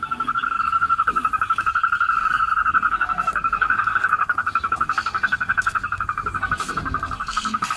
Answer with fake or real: fake